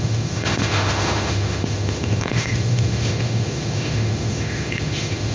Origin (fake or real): fake